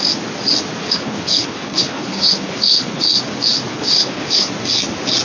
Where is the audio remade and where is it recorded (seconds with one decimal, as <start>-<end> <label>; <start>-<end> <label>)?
0.0-0.8 recorded; 0.8-3.1 remade; 3.1-3.7 recorded; 3.7-4.5 remade; 4.5-5.2 recorded